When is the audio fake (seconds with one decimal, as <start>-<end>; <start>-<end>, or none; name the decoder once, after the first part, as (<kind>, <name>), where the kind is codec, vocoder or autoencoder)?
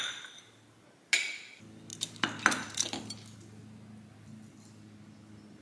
none